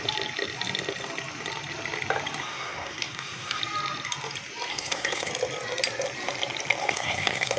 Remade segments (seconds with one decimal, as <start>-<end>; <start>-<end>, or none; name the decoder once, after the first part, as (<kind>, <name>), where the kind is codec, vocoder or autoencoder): 2.4-3.6 (codec, SNAC); 4.7-5.3; 6.8-7.6